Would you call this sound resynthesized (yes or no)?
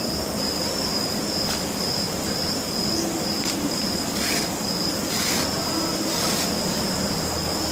yes